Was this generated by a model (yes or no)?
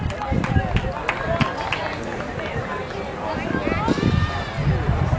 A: no